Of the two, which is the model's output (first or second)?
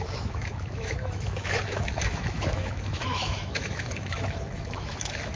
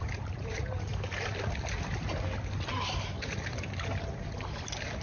first